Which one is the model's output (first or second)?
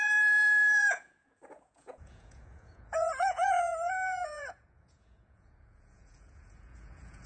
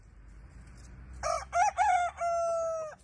first